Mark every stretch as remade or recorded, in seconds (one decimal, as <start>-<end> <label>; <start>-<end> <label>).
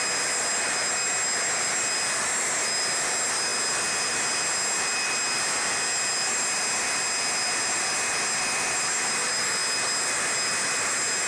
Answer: 0.0-11.3 recorded